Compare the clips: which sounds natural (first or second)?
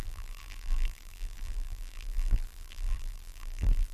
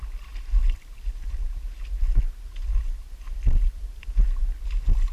second